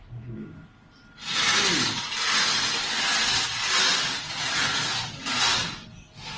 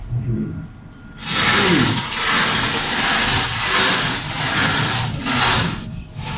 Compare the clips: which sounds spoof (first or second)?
second